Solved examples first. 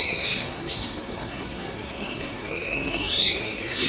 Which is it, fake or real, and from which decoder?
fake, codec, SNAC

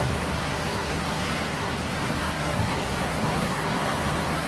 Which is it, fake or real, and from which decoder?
fake, codec, SNAC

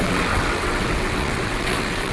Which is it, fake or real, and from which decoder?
fake, vocoder, WaveNeXt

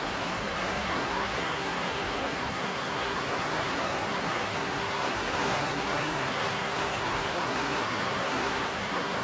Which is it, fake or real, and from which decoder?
fake, codec, SNAC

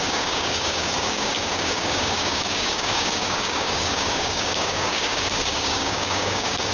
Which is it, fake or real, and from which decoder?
fake, codec, DAC